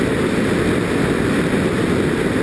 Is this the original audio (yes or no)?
yes